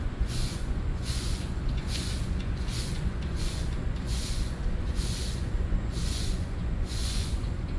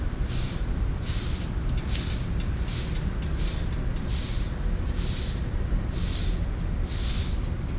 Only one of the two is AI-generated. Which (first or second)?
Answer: first